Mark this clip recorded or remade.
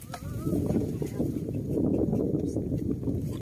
recorded